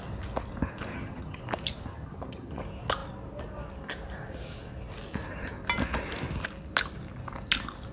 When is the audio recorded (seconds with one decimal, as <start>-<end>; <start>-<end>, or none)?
0.0-0.9; 1.4-1.9; 2.6-7.9